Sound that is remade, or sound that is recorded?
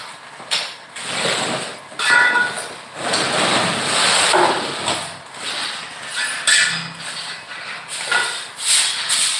recorded